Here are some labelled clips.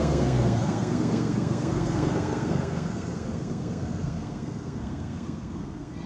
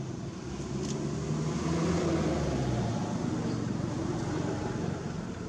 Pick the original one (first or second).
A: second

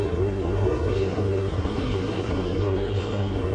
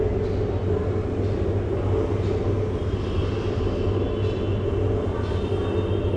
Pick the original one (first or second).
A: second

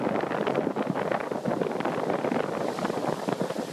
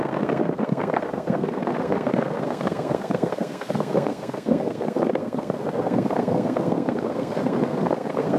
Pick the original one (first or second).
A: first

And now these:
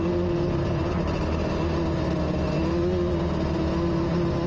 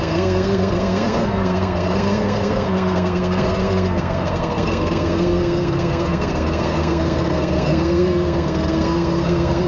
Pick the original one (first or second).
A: first